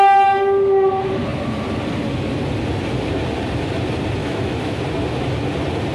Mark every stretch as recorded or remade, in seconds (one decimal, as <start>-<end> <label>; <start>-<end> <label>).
0.0-4.2 recorded; 4.2-4.8 remade; 4.8-5.9 recorded